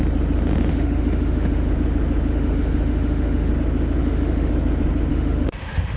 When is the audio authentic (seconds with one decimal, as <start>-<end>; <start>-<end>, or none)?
0.0-0.7; 1.7-2.3; 3.5-4.0; 4.5-5.1